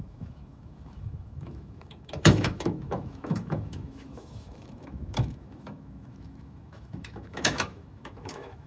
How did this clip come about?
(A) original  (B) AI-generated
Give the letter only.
B